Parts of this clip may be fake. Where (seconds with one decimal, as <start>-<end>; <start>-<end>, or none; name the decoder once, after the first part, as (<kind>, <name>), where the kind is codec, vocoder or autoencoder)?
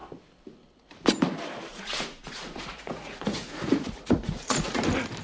1.7-4.8 (vocoder, Vocos)